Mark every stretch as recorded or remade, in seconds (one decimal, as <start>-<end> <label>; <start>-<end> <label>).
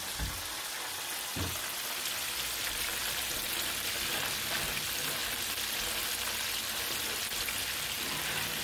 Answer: 0.0-8.6 recorded